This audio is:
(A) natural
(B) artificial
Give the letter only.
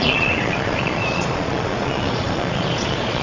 B